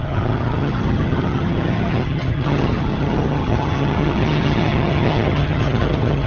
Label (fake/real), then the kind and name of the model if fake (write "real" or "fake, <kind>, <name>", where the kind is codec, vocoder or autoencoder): fake, vocoder, HiFi-GAN